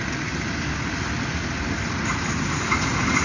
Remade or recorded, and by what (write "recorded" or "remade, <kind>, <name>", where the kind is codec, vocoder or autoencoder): recorded